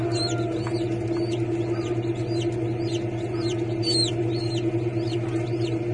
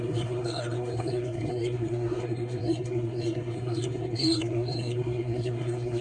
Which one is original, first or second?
first